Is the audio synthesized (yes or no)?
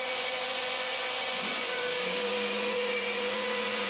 yes